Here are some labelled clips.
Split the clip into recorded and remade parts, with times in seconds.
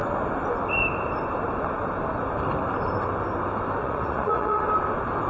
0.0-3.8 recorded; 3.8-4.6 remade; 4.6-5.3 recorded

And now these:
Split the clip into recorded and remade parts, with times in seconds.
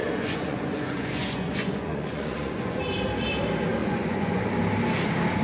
0.0-2.8 remade; 2.8-3.8 recorded; 3.8-4.4 remade; 4.4-5.4 recorded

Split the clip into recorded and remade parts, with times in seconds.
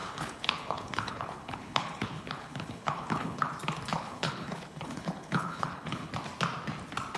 0.0-3.5 remade; 3.5-3.9 recorded; 3.9-6.1 remade; 6.1-7.2 recorded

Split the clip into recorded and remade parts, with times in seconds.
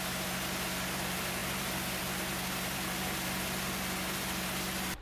0.0-5.0 recorded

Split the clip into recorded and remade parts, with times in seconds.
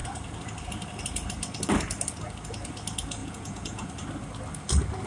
0.0-3.2 recorded; 3.2-3.9 remade; 3.9-5.1 recorded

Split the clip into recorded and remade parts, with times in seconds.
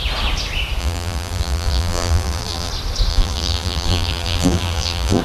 0.0-0.8 recorded; 0.8-2.7 remade; 2.7-3.1 recorded; 3.1-5.2 remade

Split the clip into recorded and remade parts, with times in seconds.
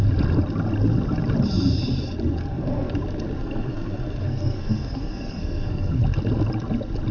0.0-2.4 recorded; 2.4-2.9 remade; 2.9-3.4 recorded; 3.4-6.0 remade; 6.0-7.1 recorded